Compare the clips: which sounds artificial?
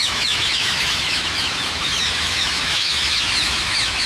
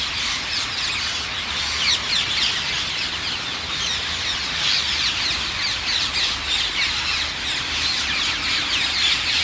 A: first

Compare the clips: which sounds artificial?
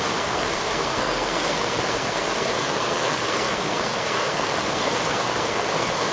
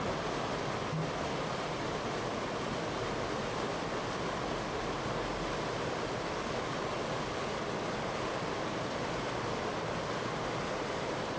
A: first